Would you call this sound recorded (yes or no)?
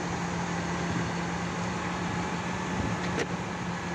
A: yes